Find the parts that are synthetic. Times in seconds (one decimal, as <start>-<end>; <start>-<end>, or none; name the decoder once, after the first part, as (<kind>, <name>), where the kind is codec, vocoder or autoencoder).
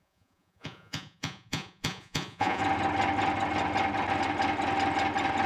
0.0-2.6 (vocoder, Vocos)